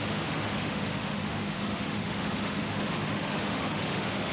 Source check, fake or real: fake